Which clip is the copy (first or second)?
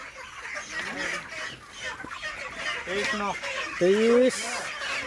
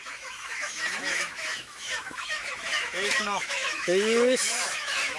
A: second